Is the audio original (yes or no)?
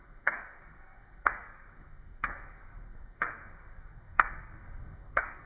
no